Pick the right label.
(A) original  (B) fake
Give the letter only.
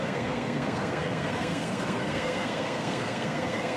B